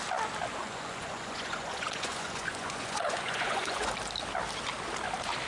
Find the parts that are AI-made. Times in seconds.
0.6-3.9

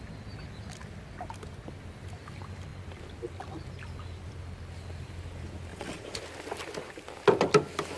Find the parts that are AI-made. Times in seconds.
5.7-6.2

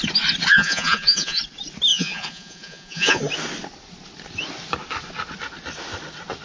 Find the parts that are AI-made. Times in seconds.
0.5-1.4; 1.9-3.2